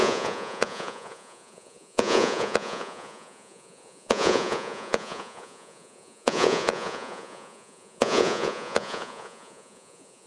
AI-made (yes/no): yes